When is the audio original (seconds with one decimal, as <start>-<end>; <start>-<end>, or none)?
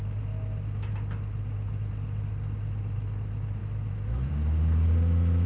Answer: 0.0-3.6; 4.3-5.5